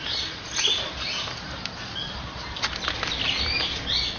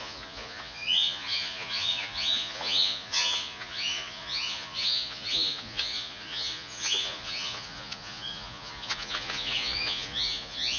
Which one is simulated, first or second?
second